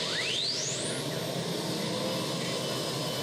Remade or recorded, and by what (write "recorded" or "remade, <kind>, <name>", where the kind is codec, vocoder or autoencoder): recorded